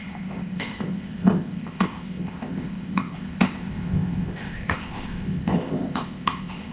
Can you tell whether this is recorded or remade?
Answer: remade